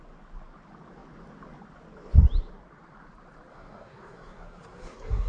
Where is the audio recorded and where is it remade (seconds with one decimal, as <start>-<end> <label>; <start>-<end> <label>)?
0.0-3.5 recorded; 3.5-5.3 remade